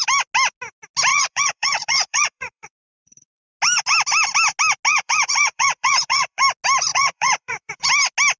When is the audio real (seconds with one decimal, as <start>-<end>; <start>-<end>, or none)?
0.0-1.1; 3.4-4.9; 6.4-6.9; 7.9-8.4

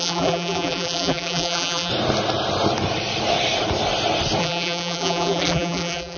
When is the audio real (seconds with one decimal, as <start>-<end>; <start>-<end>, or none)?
1.9-4.4

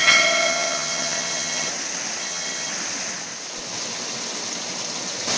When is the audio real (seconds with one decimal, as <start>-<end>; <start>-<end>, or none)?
1.7-2.2; 2.7-5.4

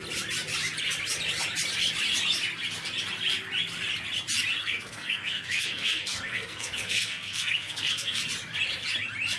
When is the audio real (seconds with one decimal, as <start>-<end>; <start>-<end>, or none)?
0.0-4.6; 8.2-9.4

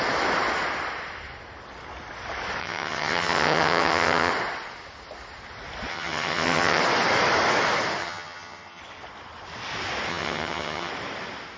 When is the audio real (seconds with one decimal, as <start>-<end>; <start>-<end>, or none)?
0.0-2.6; 4.3-5.9; 6.8-8.0; 8.8-10.1; 10.9-11.6

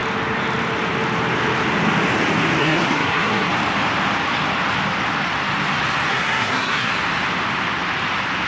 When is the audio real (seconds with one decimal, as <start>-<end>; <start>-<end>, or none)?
0.0-2.6; 3.5-6.1; 6.9-8.5

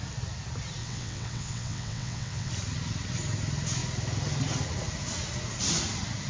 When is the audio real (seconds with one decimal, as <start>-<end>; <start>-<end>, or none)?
0.0-0.8; 2.5-6.3